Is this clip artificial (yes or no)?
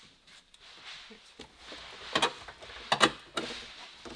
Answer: no